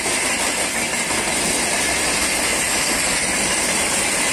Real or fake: real